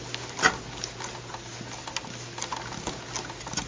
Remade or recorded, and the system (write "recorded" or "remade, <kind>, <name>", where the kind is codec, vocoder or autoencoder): recorded